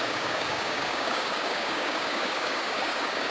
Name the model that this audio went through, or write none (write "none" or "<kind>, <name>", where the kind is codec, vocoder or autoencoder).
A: codec, DAC